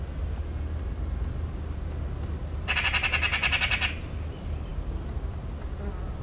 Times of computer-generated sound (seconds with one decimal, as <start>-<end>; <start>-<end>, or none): none